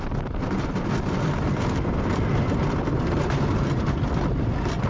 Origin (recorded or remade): remade